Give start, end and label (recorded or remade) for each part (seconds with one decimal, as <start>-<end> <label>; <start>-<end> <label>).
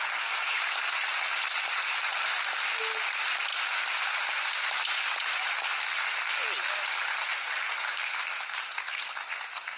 0.0-9.8 recorded